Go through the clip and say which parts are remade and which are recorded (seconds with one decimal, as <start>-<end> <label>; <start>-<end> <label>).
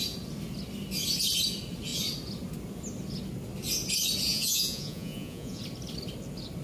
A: 0.0-4.3 recorded; 4.3-5.6 remade; 5.6-6.6 recorded